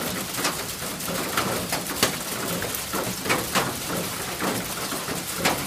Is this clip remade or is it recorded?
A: recorded